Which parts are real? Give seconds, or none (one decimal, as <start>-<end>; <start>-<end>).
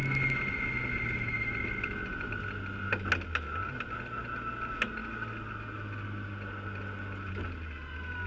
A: 0.0-8.3